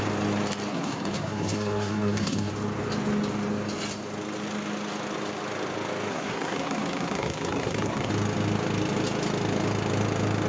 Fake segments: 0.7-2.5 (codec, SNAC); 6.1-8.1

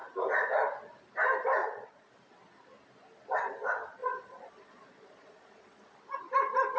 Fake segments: 1.6-2.1 (vocoder, Vocos); 4.0-6.0

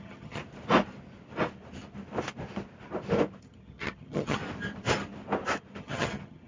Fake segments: 0.0-0.4 (vocoder, HiFi-GAN); 3.4-4.4; 5.8-6.5

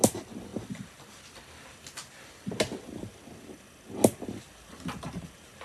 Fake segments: none